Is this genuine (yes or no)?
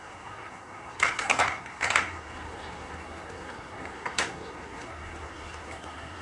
no